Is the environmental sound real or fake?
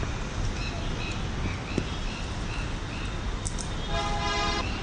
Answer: real